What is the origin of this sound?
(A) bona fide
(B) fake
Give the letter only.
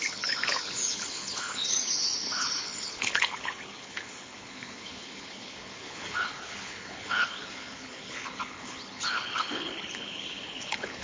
B